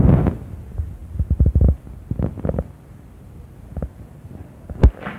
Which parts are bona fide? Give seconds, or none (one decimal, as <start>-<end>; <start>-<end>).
0.0-1.0; 4.1-5.2